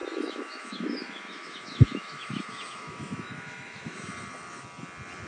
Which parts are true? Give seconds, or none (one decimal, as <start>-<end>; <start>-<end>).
4.1-5.3

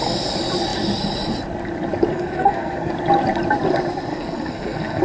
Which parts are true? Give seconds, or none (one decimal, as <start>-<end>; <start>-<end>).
0.0-2.1; 2.9-4.1

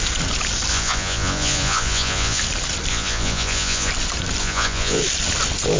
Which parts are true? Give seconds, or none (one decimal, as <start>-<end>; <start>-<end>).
0.0-0.7; 2.4-2.9; 3.9-4.4; 5.0-5.8

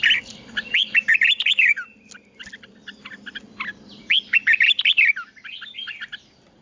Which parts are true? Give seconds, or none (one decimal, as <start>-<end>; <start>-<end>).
1.7-2.4

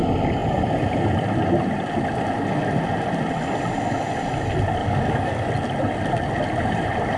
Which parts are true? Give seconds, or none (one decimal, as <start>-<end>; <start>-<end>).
0.0-4.8; 5.5-7.2